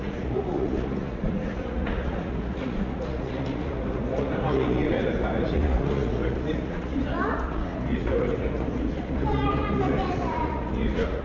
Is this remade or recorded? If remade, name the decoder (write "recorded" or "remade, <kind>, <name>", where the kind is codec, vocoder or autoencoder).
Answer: remade, vocoder, Vocos